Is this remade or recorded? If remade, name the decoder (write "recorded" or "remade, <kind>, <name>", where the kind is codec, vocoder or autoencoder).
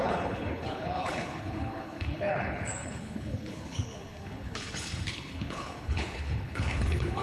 remade, codec, HILCodec